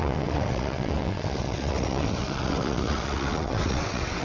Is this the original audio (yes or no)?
no